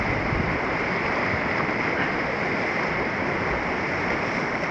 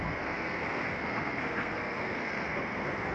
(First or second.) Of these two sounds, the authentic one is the first